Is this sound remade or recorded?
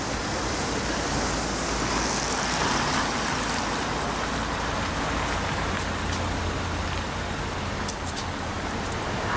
recorded